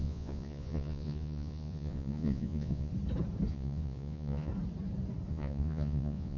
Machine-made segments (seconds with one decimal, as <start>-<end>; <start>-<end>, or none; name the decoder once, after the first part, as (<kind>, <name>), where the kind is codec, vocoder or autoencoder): 0.0-2.9 (vocoder, Vocos); 3.5-4.5; 5.3-6.4